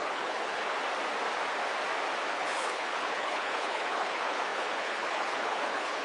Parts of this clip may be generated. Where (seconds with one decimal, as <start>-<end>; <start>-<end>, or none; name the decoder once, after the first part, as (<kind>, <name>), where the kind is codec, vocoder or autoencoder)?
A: 0.0-0.8 (codec, HILCodec); 2.3-6.0